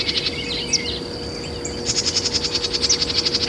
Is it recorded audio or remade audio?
recorded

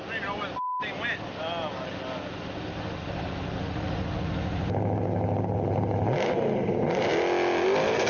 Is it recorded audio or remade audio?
recorded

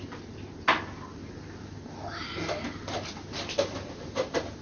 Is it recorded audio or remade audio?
recorded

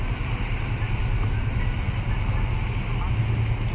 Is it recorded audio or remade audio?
recorded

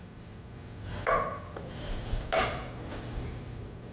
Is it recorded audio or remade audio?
recorded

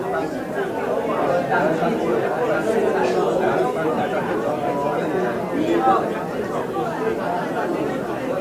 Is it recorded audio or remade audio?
recorded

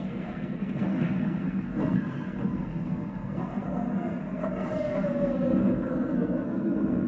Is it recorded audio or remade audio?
remade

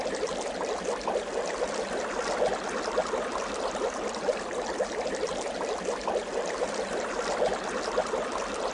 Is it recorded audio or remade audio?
recorded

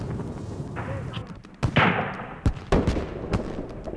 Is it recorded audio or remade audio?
recorded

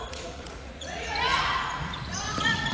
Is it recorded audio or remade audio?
remade